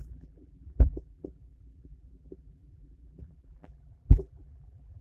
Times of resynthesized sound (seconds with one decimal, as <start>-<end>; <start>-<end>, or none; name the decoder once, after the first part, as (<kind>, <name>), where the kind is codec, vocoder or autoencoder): 0.0-5.0 (vocoder, BigVGAN v2)